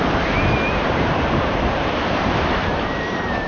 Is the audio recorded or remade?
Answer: recorded